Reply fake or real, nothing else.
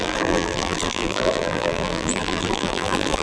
fake